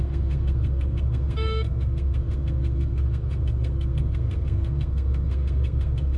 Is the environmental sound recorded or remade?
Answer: remade